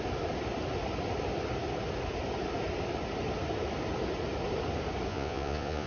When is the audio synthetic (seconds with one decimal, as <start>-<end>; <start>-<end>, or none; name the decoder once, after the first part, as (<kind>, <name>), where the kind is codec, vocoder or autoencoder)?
5.1-5.9 (vocoder, Vocos)